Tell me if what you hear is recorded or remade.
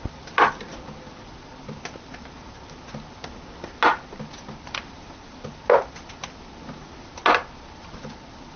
recorded